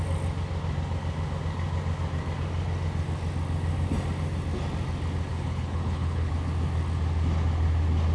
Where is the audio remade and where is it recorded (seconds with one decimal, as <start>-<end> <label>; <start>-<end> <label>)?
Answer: 0.0-5.3 recorded; 5.3-6.3 remade; 6.3-8.1 recorded